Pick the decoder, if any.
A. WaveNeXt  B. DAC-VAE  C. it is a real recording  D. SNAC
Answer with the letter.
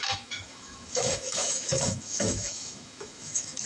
B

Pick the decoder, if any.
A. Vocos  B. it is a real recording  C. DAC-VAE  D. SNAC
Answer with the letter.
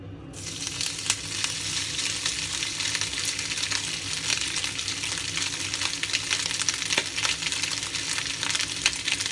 B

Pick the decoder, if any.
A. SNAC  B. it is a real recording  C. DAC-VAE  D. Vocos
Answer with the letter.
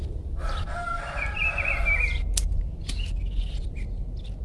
B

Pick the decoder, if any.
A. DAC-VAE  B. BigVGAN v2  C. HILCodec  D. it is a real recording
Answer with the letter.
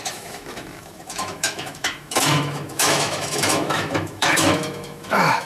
A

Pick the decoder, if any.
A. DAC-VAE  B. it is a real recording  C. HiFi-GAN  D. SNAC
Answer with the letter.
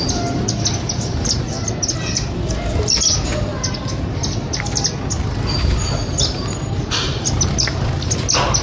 B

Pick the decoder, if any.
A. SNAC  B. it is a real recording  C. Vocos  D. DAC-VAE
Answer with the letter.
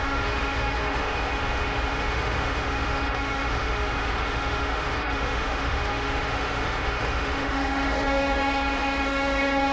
D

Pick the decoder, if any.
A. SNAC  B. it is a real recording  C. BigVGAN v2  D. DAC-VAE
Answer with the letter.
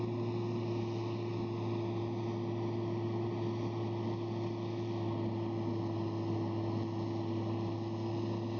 B